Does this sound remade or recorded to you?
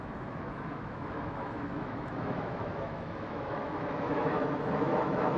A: remade